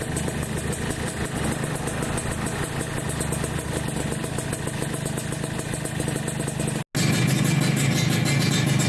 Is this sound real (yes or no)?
yes